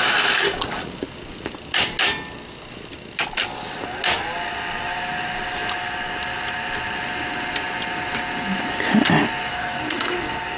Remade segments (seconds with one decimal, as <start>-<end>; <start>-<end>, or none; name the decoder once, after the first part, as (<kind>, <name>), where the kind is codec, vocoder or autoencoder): 9.5-10.6 (codec, SNAC)